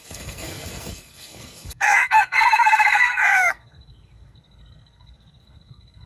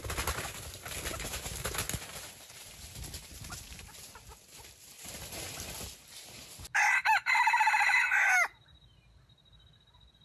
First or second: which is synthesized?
first